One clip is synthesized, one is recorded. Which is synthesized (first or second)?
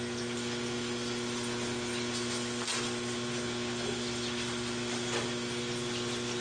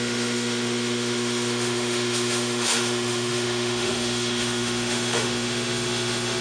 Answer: second